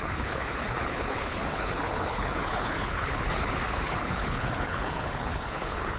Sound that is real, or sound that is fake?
fake